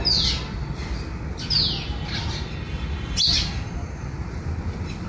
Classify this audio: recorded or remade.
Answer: recorded